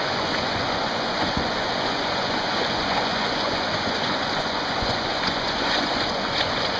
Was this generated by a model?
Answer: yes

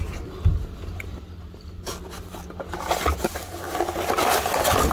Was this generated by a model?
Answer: no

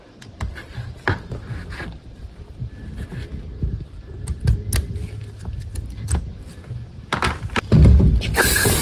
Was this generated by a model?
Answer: no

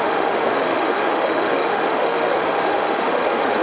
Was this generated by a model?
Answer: yes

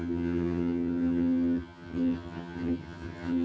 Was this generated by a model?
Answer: yes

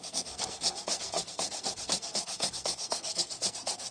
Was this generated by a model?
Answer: yes